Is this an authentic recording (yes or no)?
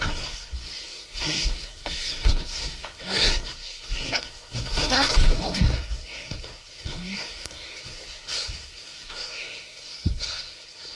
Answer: no